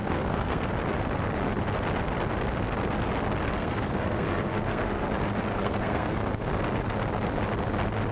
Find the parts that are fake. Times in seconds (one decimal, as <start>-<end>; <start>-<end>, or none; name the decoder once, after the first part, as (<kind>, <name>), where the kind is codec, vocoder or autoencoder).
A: 0.0-0.7 (codec, SNAC); 3.6-5.1; 5.5-6.3